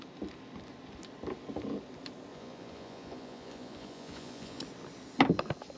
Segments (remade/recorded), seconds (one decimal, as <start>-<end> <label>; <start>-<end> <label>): 0.0-2.3 recorded; 2.3-4.6 remade; 4.6-5.8 recorded